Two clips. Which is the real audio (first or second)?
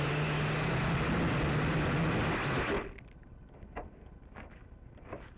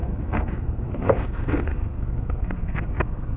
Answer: first